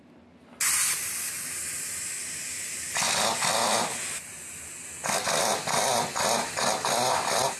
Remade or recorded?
recorded